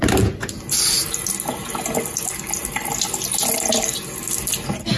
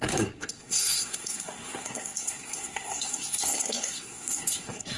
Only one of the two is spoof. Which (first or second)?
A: second